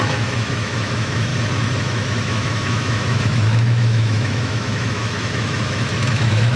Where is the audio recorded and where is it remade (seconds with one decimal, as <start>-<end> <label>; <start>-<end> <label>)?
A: 0.0-1.3 remade; 1.3-1.8 recorded; 1.8-6.6 remade